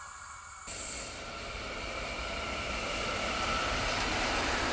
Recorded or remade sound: recorded